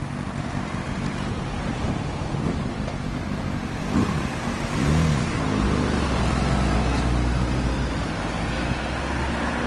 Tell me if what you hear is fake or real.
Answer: real